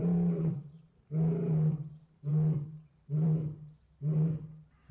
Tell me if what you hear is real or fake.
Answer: fake